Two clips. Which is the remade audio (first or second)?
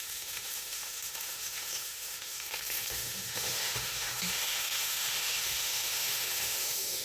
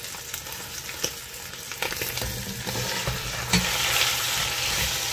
first